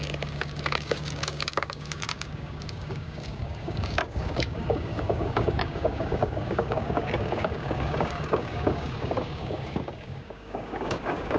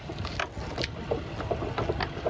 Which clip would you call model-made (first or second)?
first